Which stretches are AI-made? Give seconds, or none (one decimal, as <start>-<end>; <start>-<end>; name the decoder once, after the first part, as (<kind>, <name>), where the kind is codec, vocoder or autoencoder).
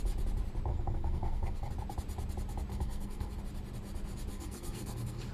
0.7-1.7 (codec, SNAC); 2.7-3.4; 4.3-5.3